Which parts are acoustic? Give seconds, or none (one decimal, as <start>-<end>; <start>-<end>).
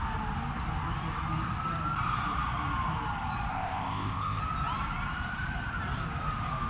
0.0-3.5; 4.4-6.7